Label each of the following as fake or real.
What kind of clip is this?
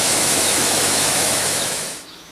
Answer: fake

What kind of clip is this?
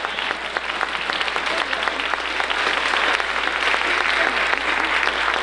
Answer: real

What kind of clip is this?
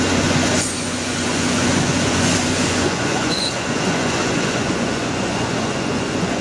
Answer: fake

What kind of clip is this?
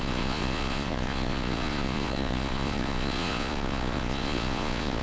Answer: fake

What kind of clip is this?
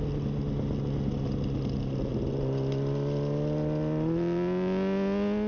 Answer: real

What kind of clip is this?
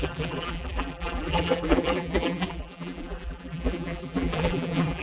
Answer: fake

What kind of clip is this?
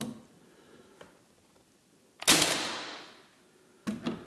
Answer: real